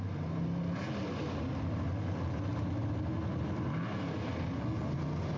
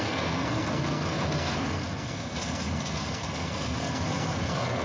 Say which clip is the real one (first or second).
first